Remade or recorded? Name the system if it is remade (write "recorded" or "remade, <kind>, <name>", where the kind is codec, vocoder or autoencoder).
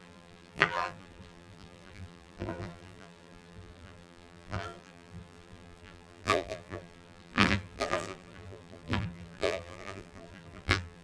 remade, vocoder, BigVGAN v2